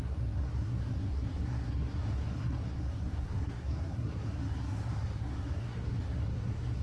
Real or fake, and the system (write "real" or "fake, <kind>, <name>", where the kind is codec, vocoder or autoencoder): fake, codec, SNAC